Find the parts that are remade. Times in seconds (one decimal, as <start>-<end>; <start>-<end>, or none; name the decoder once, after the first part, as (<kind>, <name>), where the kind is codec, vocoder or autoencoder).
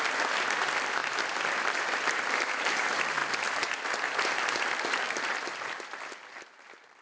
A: 0.0-1.0 (vocoder, BigVGAN v2); 1.6-3.2